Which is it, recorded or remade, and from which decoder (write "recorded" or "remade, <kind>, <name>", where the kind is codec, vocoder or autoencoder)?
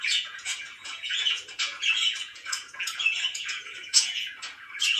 remade, vocoder, Vocos